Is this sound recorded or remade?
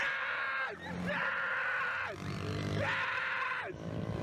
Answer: recorded